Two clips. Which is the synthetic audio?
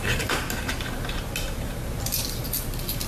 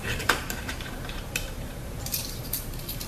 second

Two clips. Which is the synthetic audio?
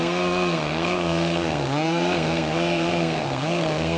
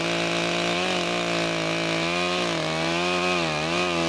first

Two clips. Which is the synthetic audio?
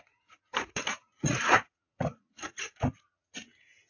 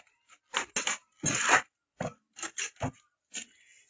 first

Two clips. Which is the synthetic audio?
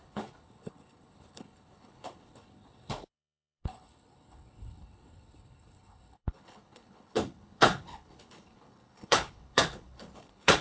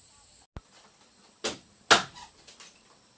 first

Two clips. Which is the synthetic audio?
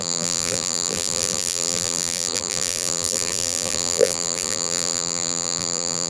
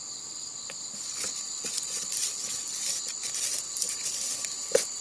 first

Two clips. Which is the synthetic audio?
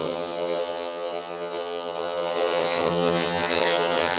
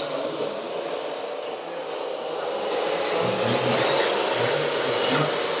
first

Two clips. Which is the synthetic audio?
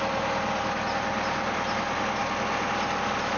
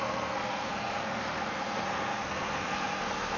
second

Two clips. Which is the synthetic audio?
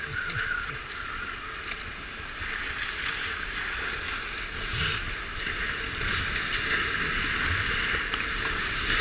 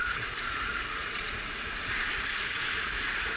second